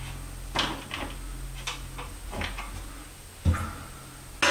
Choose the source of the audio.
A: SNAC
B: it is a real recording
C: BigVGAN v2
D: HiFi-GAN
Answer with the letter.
B